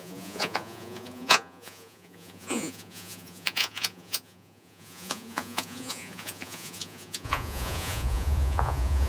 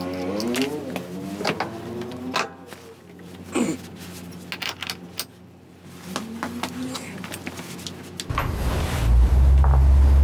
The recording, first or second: second